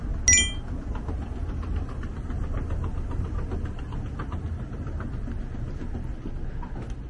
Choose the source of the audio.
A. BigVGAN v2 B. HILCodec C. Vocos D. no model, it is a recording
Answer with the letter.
D